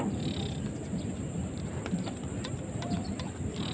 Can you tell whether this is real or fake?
real